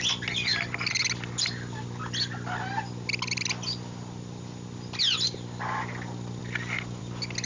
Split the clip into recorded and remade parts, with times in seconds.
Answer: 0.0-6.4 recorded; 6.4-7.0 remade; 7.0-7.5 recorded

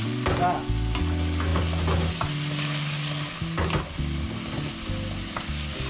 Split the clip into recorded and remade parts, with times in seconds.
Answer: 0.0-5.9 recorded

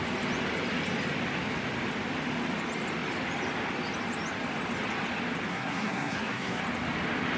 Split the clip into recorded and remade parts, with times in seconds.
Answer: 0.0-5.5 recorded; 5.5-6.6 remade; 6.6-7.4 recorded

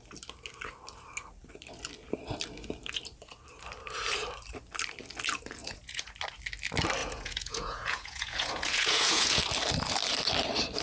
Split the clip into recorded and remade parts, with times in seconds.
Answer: 0.0-5.6 recorded; 5.6-6.1 remade; 6.1-7.0 recorded; 7.0-9.4 remade; 9.4-10.8 recorded

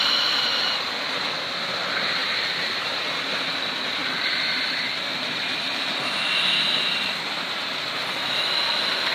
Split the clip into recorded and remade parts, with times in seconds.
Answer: 0.0-2.2 recorded; 2.2-3.1 remade; 3.1-4.0 recorded; 4.0-4.6 remade; 4.6-9.1 recorded

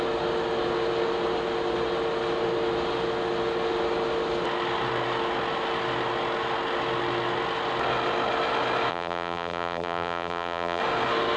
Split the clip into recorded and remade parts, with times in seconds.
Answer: 0.0-8.9 recorded; 8.9-10.8 remade; 10.8-11.4 recorded

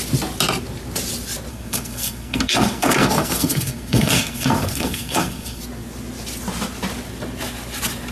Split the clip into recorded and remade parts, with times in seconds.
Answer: 0.0-1.5 recorded; 1.5-5.6 remade; 5.6-8.1 recorded

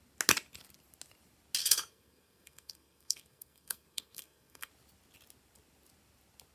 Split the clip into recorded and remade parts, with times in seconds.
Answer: 0.0-1.6 recorded; 1.6-4.7 remade; 4.7-6.5 recorded